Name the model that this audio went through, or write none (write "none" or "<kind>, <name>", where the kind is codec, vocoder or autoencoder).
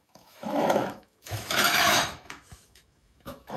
autoencoder, DAC-VAE